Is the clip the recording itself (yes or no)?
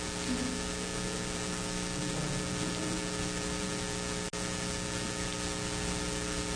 yes